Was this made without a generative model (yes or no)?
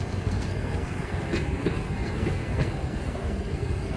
no